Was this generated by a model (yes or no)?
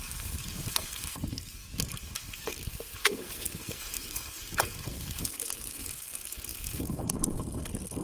yes